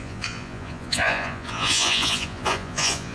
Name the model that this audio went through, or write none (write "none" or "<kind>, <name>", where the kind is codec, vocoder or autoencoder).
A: vocoder, Vocos